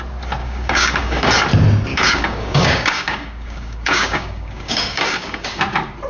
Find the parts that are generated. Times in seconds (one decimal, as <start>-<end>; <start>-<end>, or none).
0.4-1.3; 1.9-5.6

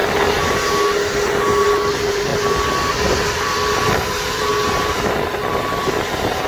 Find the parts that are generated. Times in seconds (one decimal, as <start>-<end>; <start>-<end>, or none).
1.6-2.3; 2.9-4.5; 5.4-6.5

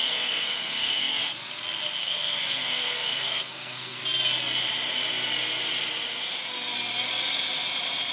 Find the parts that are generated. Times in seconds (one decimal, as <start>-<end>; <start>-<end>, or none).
0.0-1.3; 2.0-4.0

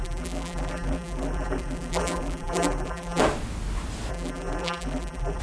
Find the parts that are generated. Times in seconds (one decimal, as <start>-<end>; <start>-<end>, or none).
0.0-3.2; 4.1-5.4

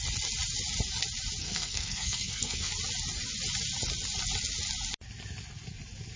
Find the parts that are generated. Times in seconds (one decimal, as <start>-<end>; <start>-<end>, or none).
1.4-2.7

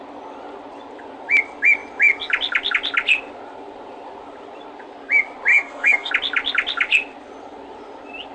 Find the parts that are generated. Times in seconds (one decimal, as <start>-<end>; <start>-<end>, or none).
5.5-6.1

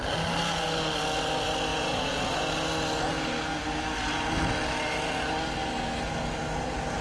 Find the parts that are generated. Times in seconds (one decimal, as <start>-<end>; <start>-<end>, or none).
1.7-2.2